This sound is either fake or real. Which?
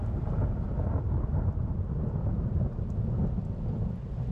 real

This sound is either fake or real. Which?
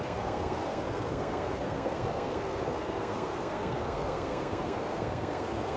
fake